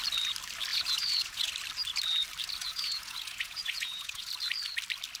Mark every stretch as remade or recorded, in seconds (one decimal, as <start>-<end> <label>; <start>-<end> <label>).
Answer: 0.0-0.7 recorded; 0.7-1.5 remade; 1.5-2.6 recorded; 2.6-4.3 remade; 4.3-5.2 recorded

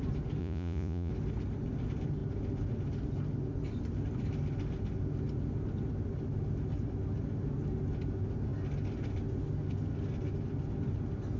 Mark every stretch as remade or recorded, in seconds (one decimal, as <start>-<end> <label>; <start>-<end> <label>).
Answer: 0.0-0.4 recorded; 0.4-1.1 remade; 1.1-11.4 recorded